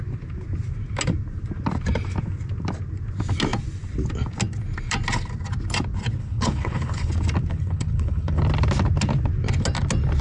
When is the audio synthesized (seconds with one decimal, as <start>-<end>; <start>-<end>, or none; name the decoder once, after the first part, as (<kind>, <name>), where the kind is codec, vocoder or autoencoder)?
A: 6.2-7.1 (codec, HILCodec); 7.5-8.4